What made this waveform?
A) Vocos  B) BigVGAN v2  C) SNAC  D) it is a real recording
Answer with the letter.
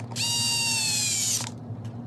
D